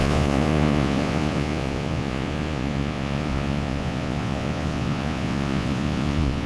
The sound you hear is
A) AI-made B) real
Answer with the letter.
A